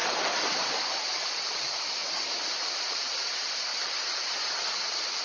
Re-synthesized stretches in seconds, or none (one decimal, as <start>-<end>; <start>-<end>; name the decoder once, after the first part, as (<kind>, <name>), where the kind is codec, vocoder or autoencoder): 0.0-2.0 (vocoder, BigVGAN v2); 2.6-5.2